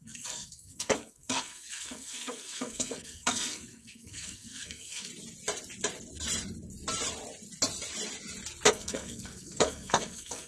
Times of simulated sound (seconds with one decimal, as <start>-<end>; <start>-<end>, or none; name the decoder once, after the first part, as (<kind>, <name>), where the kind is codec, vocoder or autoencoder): 0.0-5.1 (codec, SNAC); 8.7-10.5